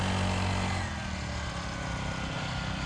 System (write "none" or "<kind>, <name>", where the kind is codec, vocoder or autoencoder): none